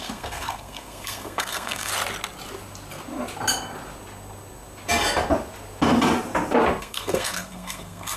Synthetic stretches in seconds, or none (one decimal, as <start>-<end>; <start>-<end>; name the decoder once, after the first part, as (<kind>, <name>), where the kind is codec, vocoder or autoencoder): 0.0-1.9 (codec, SNAC); 6.8-8.2